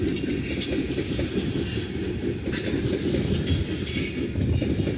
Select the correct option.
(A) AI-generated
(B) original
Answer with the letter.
B